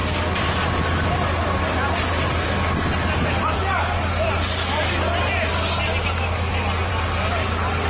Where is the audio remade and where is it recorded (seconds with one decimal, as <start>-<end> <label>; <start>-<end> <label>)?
0.0-7.9 recorded